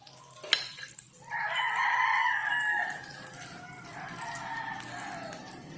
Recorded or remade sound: recorded